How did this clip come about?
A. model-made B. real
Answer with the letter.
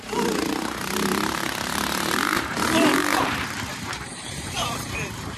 A